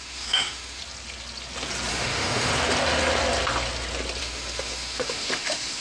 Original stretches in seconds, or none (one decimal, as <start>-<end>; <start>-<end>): 0.8-1.9; 2.5-4.2